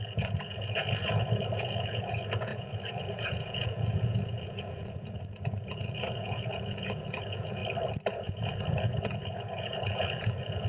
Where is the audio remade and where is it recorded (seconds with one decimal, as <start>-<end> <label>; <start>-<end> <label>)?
0.0-7.6 remade; 7.6-8.1 recorded; 8.1-10.7 remade